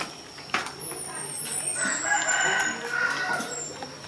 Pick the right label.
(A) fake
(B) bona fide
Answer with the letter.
B